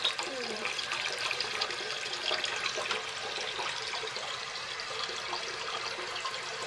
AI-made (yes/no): yes